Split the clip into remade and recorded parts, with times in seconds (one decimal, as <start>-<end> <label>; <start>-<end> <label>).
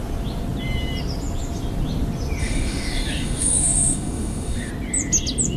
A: 0.0-2.4 recorded; 2.4-4.7 remade; 4.7-5.6 recorded